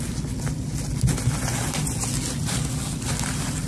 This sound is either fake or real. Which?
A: real